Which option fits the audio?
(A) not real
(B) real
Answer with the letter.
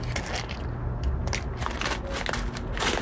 B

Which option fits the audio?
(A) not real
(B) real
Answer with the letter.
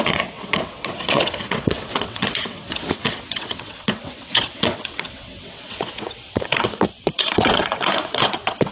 A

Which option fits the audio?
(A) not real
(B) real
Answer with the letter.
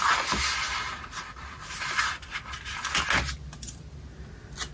B